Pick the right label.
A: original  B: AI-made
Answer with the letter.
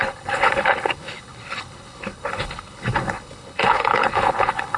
B